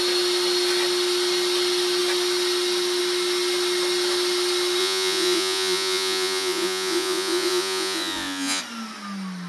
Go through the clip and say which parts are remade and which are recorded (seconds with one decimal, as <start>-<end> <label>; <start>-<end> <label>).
0.0-4.8 recorded; 4.8-8.6 remade; 8.6-9.5 recorded